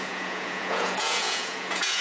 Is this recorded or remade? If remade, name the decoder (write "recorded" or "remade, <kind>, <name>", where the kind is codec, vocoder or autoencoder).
remade, vocoder, Vocos